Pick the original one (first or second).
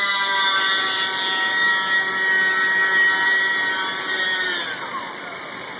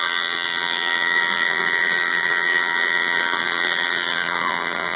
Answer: first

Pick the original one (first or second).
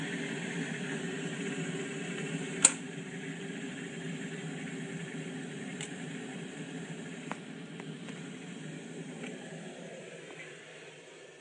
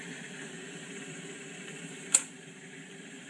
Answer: first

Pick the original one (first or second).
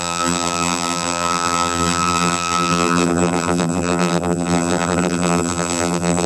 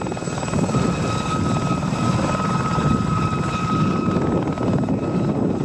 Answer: second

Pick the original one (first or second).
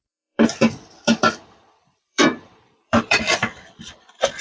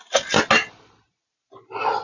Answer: second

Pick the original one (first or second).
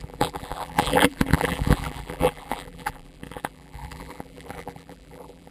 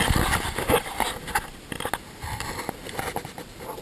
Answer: second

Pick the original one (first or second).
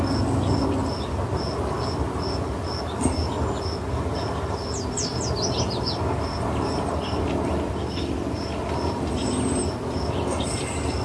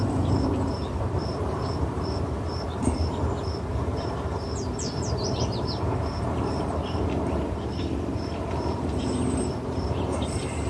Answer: first